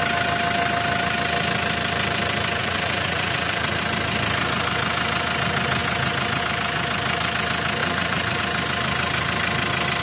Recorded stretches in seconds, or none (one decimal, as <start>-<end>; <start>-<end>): 0.0-2.6; 3.8-7.8; 8.4-10.0